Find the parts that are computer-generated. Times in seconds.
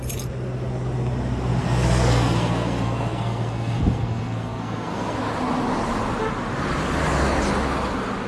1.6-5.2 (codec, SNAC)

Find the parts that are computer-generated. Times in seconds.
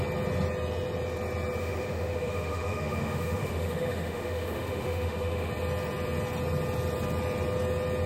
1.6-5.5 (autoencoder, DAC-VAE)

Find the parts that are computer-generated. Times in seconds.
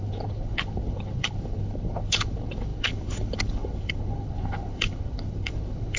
0.0-6.0 (codec, HILCodec)